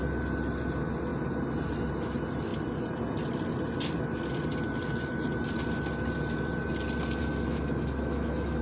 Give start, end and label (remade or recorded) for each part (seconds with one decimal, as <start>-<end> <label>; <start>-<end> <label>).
0.0-7.2 recorded; 7.2-8.6 remade